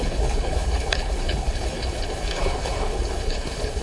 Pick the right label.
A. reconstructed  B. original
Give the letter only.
A